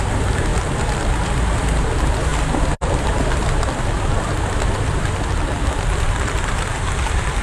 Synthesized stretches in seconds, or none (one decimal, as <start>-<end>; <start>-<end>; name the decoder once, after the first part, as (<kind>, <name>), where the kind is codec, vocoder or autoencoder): 0.0-0.5 (vocoder, BigVGAN v2); 1.1-2.3; 3.0-7.4